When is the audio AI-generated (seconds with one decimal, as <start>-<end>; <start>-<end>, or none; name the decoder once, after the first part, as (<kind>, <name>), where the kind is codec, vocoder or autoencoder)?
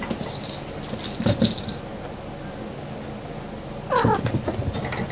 none